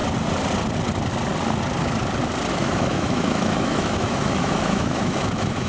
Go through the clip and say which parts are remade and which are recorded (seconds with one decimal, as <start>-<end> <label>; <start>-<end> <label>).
0.0-2.5 recorded; 2.5-5.7 remade